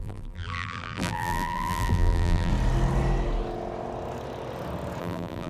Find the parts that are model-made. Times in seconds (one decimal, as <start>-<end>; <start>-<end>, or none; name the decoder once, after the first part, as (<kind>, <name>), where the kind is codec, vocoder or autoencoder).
0.0-2.5 (vocoder, BigVGAN v2); 5.0-5.5